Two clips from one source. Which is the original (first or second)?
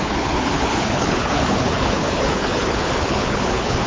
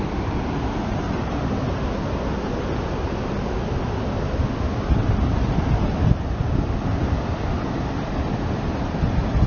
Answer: second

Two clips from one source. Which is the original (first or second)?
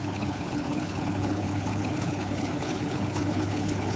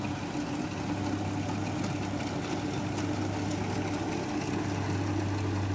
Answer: second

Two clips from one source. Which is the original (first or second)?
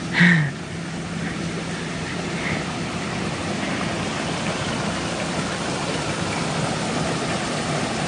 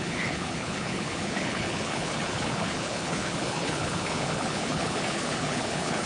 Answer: first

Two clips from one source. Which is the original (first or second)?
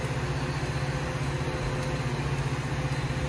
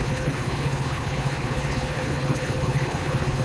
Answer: first